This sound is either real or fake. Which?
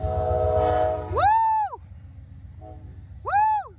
real